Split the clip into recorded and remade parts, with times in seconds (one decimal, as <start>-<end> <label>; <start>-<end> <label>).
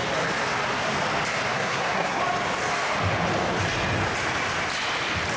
0.0-1.5 recorded; 1.5-2.2 remade; 2.2-5.4 recorded